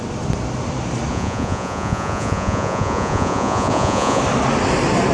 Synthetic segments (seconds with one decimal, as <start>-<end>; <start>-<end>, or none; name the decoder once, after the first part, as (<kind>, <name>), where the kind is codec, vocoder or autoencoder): 1.1-4.2 (vocoder, Vocos)